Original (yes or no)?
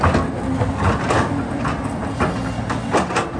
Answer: yes